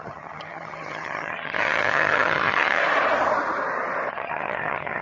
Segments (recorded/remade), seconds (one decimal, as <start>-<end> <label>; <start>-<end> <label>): 0.0-2.8 remade; 2.8-4.1 recorded; 4.1-5.0 remade